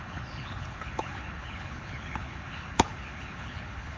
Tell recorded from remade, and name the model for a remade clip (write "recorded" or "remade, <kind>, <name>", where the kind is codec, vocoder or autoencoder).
remade, codec, HILCodec